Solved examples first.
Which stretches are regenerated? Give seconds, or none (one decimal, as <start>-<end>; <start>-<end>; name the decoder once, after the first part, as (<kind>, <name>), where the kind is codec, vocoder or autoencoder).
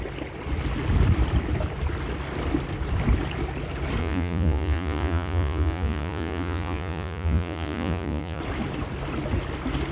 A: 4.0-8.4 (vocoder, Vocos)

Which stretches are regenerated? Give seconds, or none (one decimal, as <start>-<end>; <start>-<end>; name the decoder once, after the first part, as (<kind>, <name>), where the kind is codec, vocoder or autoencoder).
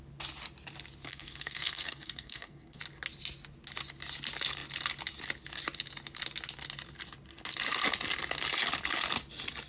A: 1.1-2.8 (codec, SNAC)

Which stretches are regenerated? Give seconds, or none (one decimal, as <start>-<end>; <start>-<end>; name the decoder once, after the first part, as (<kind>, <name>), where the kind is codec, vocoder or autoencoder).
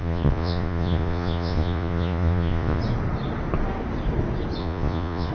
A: 0.0-2.8 (vocoder, Vocos); 4.6-5.3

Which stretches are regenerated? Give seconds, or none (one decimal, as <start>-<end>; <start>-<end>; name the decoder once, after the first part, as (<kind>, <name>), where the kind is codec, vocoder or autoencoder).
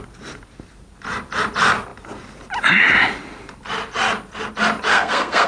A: 4.9-5.5 (codec, SNAC)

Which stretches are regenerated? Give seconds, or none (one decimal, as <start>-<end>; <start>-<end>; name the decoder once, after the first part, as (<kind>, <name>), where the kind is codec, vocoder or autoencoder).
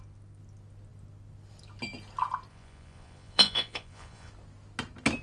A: 2.5-4.3 (vocoder, Vocos)